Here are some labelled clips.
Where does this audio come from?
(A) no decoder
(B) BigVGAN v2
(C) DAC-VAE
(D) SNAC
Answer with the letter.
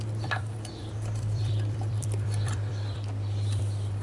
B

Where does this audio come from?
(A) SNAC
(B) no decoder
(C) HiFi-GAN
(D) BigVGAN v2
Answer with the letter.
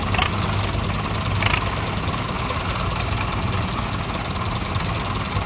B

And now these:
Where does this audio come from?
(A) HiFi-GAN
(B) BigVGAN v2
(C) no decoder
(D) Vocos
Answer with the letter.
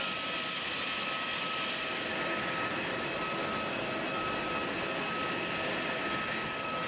C